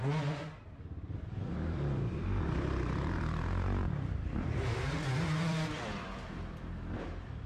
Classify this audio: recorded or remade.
remade